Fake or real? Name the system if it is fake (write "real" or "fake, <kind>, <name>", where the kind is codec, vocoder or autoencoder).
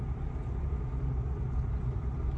real